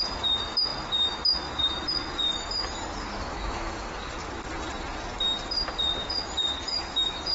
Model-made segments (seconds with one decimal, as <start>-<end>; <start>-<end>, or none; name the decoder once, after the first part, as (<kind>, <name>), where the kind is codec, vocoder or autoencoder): 3.3-3.9 (autoencoder, DAC-VAE); 6.7-7.3

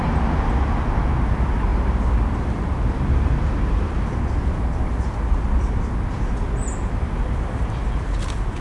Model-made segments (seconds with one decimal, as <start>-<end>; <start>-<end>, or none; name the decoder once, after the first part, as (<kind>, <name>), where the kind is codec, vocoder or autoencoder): none

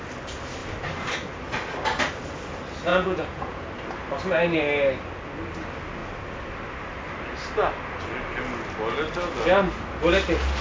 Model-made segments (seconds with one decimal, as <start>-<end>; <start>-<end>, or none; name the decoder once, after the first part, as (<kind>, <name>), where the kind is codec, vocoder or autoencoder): 2.9-3.7 (vocoder, Vocos)

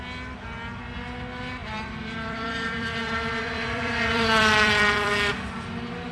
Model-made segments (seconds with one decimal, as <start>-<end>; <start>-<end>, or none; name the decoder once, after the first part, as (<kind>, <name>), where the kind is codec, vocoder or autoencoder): 1.6-5.3 (vocoder, BigVGAN v2)

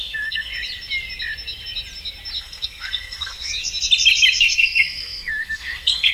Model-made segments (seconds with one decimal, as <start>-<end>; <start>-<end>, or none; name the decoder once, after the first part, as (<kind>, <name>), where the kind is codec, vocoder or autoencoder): 0.0-0.5 (codec, SNAC); 2.4-3.5; 4.4-6.1